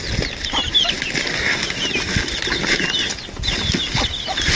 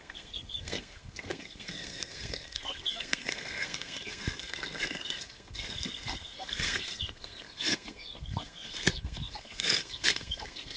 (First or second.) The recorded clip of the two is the first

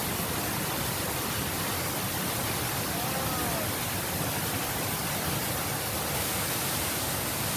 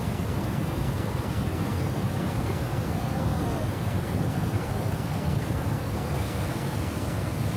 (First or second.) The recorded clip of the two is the first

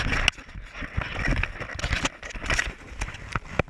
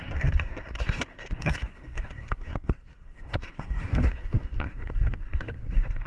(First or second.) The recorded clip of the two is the first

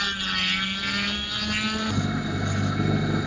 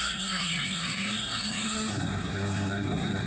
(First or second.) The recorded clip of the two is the first